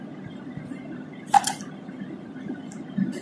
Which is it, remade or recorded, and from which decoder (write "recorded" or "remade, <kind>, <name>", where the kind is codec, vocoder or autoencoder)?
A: remade, vocoder, BigVGAN v2